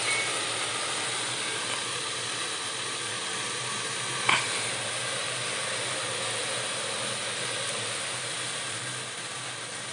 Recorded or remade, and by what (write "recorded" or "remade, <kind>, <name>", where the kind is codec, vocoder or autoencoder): recorded